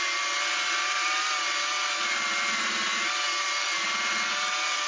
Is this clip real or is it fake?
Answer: real